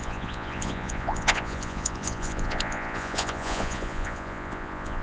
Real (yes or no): no